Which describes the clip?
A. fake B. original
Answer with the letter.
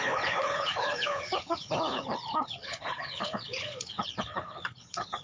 A